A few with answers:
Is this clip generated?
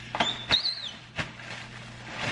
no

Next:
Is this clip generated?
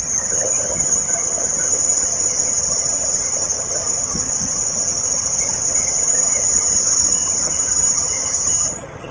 yes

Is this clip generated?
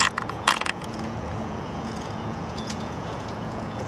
yes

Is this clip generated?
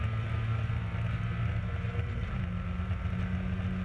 no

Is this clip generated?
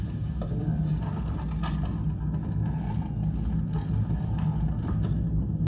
no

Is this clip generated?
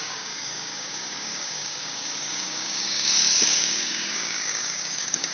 yes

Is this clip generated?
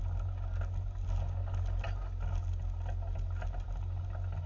no